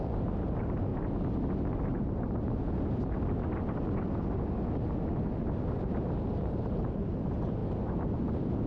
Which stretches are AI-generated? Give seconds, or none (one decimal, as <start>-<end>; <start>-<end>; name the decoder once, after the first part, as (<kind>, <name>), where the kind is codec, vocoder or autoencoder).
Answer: 0.0-0.9 (vocoder, BigVGAN v2); 5.4-7.6; 8.2-8.7